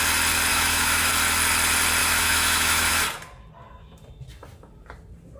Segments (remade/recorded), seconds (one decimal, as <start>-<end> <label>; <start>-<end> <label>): 0.0-0.5 recorded; 0.5-1.1 remade; 1.1-2.0 recorded; 2.0-2.9 remade; 2.9-5.4 recorded